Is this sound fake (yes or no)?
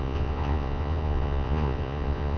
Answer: yes